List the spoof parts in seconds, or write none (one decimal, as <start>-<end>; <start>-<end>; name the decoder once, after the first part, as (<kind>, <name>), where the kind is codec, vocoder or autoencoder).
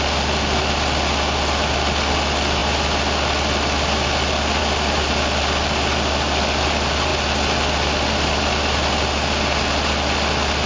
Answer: none